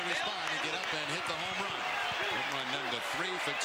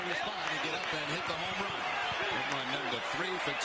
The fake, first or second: second